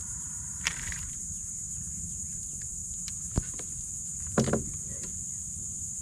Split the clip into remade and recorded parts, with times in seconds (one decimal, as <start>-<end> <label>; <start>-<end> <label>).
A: 0.0-2.2 remade; 2.2-2.8 recorded; 2.8-3.7 remade; 3.7-6.0 recorded